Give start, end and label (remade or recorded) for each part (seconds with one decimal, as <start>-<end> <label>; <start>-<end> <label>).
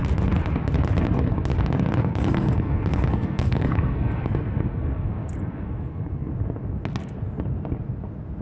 0.0-2.0 recorded; 2.0-6.3 remade; 6.3-8.4 recorded